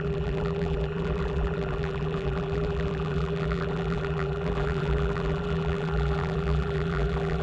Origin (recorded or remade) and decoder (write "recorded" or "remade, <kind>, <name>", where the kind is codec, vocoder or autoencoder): remade, vocoder, BigVGAN v2